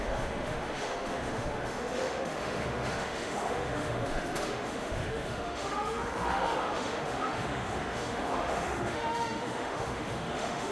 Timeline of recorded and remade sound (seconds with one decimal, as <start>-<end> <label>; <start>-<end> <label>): 0.0-10.7 remade